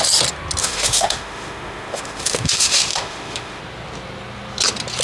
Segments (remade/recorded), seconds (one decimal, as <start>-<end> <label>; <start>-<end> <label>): 0.0-0.6 recorded; 0.6-3.6 remade; 3.6-5.0 recorded